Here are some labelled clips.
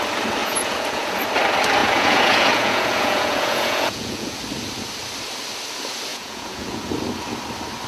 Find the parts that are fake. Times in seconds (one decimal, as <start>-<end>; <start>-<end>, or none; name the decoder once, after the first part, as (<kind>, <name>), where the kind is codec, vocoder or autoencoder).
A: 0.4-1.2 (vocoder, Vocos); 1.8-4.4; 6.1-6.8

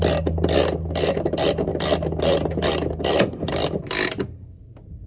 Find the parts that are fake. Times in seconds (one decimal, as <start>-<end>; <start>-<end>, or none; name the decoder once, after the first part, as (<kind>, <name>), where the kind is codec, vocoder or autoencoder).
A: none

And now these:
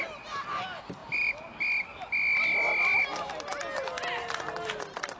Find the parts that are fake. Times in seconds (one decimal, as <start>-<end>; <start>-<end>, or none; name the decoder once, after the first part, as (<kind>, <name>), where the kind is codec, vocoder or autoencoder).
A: none

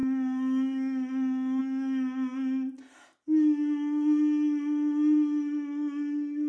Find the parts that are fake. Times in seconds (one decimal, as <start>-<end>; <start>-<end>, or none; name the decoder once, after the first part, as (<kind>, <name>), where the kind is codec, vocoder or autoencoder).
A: none

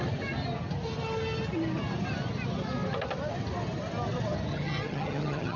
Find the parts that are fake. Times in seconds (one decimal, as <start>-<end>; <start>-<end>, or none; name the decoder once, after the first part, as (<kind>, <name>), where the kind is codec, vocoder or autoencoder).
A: 4.5-5.6 (vocoder, HiFi-GAN)

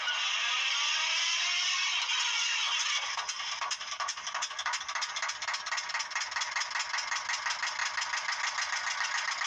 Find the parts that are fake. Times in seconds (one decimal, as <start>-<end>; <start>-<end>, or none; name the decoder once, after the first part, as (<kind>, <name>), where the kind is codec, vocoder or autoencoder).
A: none

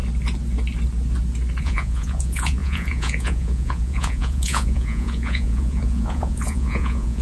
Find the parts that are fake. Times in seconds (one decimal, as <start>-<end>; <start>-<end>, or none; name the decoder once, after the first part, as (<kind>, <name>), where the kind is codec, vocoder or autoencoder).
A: 1.6-7.2 (vocoder, Vocos)

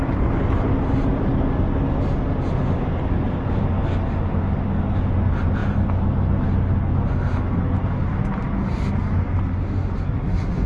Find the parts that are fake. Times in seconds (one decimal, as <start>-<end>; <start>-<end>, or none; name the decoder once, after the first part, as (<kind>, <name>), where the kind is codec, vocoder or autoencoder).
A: none